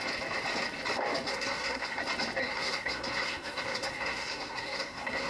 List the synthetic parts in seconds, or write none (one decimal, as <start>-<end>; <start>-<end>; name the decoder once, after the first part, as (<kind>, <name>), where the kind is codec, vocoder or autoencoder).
1.3-2.0 (codec, SNAC); 2.4-5.3